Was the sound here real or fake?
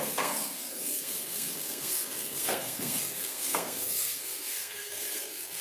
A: fake